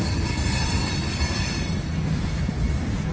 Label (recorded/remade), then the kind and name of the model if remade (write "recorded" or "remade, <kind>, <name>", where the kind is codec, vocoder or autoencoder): recorded